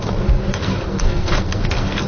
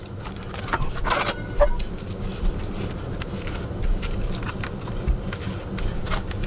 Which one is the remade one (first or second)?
first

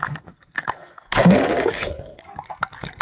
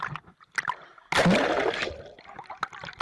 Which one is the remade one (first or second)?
first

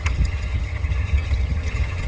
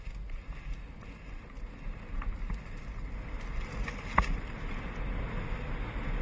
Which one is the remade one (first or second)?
first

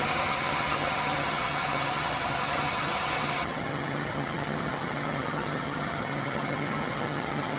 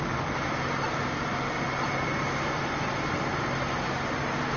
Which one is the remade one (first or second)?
first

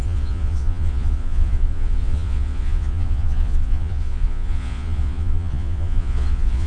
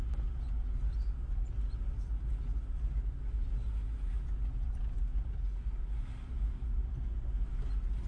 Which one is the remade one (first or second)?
first